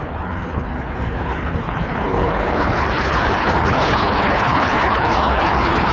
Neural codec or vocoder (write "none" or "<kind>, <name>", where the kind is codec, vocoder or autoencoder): codec, HILCodec